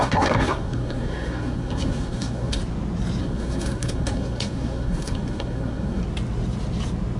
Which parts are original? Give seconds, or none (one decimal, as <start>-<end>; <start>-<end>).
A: 2.6-3.2; 6.0-7.2